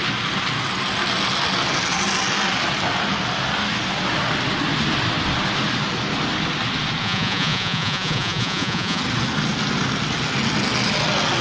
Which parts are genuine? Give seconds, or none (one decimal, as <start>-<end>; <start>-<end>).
0.0-7.0; 9.0-11.4